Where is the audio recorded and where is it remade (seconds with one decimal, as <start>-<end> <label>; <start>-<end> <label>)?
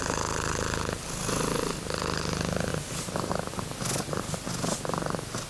0.0-5.5 recorded